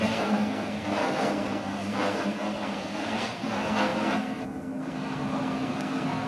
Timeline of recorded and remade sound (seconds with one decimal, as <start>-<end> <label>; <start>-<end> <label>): 0.0-6.3 remade